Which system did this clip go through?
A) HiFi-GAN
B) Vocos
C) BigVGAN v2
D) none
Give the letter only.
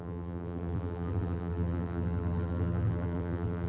C